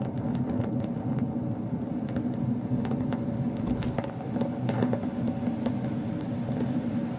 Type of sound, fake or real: real